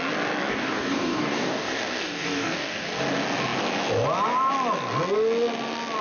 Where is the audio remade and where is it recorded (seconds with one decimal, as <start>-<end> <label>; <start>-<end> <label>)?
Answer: 0.0-0.5 recorded; 0.5-3.0 remade; 3.0-6.0 recorded